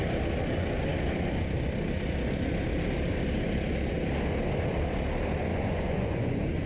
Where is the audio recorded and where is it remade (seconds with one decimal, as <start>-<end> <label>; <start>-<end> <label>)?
0.0-5.5 recorded; 5.5-6.7 remade